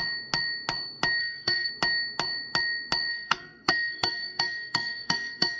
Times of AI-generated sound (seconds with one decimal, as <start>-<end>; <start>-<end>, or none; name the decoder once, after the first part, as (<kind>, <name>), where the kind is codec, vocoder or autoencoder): 1.2-1.7 (codec, SNAC); 3.1-5.6